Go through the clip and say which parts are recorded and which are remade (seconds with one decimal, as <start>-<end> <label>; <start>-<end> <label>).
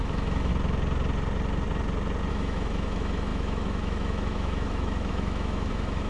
0.0-0.5 remade; 0.5-2.3 recorded; 2.3-6.1 remade